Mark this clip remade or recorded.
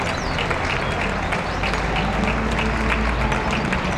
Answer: recorded